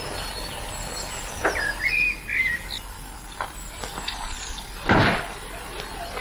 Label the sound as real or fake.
fake